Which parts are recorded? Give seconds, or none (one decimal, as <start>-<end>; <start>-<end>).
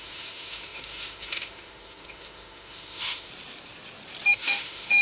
3.3-4.3